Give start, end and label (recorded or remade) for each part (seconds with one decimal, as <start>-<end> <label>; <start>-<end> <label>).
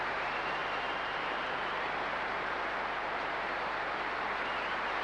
0.0-5.0 remade